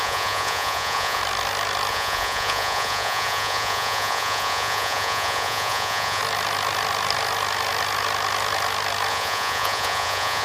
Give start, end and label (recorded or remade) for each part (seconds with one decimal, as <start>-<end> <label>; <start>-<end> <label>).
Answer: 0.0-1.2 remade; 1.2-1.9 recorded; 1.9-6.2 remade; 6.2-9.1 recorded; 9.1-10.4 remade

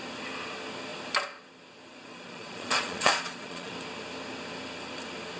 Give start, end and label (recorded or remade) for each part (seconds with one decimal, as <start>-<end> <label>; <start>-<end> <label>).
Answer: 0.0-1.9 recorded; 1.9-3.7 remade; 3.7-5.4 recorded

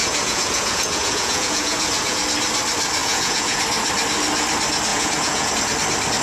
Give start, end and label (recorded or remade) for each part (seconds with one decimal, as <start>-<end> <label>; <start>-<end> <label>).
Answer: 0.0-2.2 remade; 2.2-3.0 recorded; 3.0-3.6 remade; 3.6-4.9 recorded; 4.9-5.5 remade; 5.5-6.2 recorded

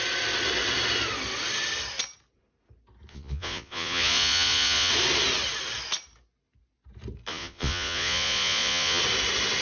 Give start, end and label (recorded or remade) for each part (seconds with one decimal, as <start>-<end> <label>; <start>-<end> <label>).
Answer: 0.0-3.1 recorded; 3.1-4.9 remade; 4.9-7.3 recorded; 7.3-9.0 remade; 9.0-9.6 recorded

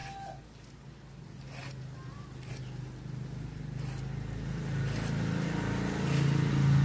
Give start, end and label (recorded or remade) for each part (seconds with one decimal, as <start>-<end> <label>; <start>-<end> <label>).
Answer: 0.0-6.8 recorded